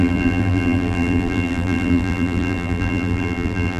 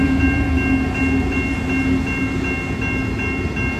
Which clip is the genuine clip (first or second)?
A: second